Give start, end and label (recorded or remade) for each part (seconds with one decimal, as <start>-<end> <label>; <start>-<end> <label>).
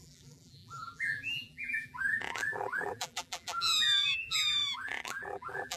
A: 0.0-5.8 remade